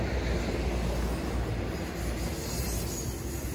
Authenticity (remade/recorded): recorded